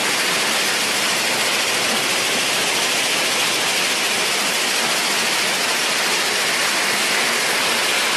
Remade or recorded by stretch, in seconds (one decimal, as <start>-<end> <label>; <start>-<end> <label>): 0.0-8.2 recorded